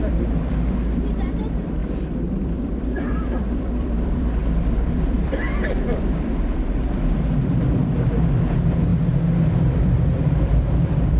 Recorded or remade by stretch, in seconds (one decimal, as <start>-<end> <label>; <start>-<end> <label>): 0.0-8.9 remade; 8.9-9.7 recorded; 9.7-11.2 remade